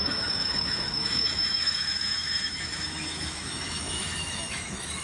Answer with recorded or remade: remade